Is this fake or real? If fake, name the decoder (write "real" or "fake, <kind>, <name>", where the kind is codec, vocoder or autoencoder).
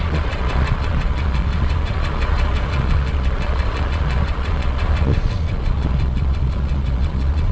fake, vocoder, Vocos